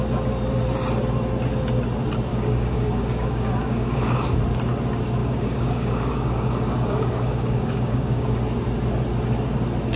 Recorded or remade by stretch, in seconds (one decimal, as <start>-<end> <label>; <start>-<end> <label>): 0.0-2.3 recorded; 2.3-4.3 remade; 4.3-5.2 recorded; 5.2-8.4 remade; 8.4-10.0 recorded